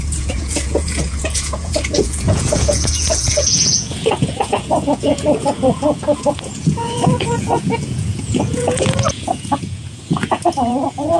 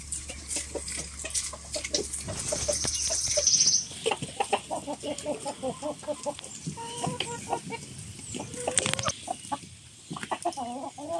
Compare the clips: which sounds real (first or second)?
second